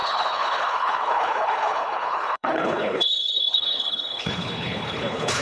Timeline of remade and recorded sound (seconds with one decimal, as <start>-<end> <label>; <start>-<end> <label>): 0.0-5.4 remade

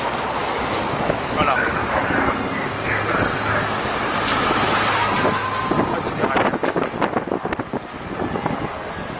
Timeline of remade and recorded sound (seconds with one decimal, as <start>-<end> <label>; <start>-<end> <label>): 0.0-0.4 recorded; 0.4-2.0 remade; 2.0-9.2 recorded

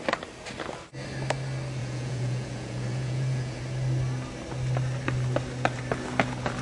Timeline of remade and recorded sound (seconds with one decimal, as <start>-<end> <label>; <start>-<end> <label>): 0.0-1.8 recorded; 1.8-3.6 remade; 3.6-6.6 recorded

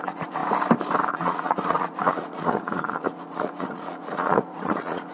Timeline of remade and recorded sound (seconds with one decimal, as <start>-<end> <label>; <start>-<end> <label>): 0.0-0.4 remade; 0.4-1.1 recorded; 1.1-5.1 remade

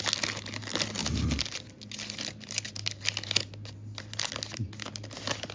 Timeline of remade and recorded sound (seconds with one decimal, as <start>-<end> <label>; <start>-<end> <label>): 0.0-5.5 recorded

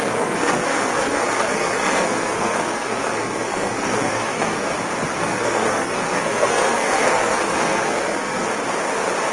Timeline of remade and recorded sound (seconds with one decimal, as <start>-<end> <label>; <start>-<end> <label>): 0.0-4.7 remade; 4.7-5.2 recorded; 5.2-8.5 remade; 8.5-9.3 recorded

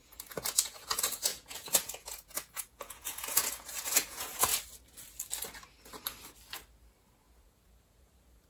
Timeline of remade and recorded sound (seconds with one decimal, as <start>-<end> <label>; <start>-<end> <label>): 0.0-4.5 remade; 4.5-7.2 recorded; 7.2-8.5 remade